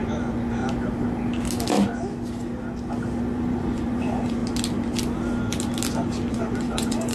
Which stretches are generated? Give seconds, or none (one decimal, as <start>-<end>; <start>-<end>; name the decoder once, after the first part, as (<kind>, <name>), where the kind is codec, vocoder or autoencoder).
0.0-0.6 (vocoder, Vocos); 3.2-4.4; 6.3-7.1